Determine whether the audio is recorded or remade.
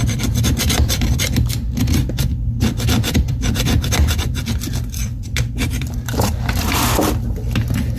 remade